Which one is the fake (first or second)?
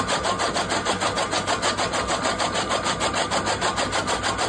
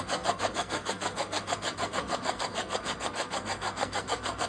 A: second